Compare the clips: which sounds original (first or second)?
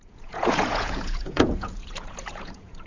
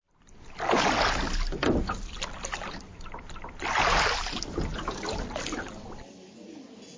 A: second